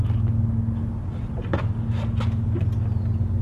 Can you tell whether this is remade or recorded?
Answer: recorded